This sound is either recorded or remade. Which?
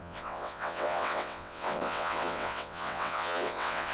remade